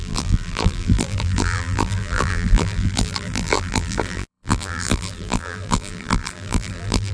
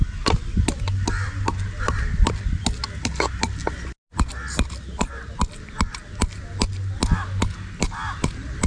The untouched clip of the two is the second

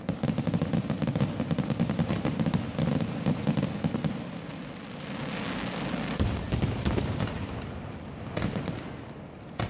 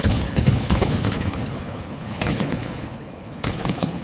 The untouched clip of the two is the first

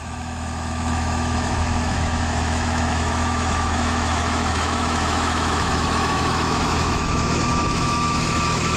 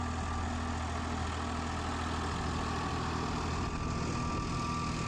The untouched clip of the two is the second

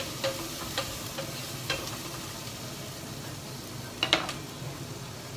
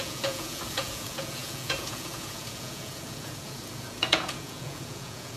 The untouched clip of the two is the first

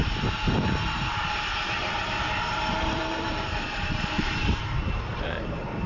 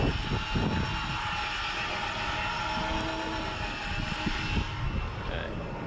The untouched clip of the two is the second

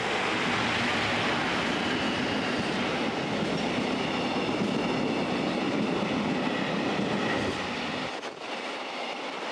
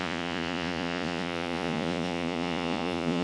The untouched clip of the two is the first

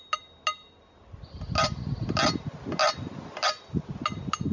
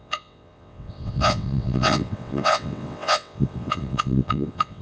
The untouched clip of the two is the first